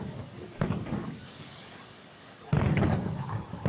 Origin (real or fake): fake